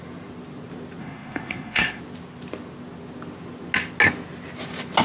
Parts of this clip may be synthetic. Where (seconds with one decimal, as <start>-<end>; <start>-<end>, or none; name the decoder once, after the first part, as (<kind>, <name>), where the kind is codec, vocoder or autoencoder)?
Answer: 1.0-2.0 (codec, SNAC)